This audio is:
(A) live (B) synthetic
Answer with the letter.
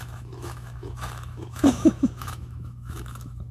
B